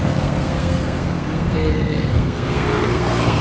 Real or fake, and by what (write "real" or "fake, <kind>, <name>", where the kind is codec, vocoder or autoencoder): fake, codec, SNAC